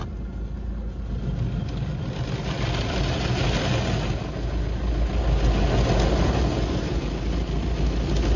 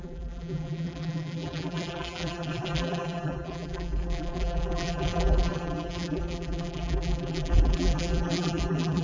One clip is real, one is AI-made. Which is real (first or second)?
first